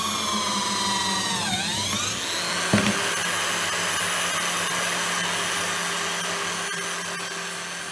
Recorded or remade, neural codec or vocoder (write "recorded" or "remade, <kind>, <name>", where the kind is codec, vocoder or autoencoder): recorded